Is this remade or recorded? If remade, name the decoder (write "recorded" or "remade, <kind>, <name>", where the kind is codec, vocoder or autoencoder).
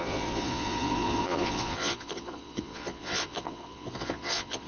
remade, vocoder, Vocos